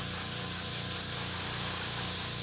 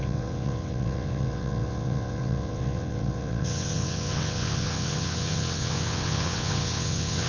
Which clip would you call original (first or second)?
first